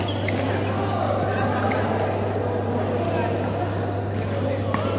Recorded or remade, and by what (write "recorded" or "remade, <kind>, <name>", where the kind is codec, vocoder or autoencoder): recorded